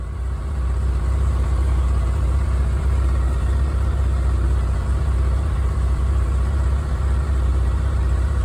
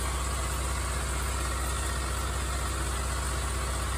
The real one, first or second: second